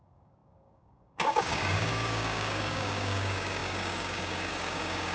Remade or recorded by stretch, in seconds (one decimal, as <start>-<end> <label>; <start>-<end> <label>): 0.0-5.1 remade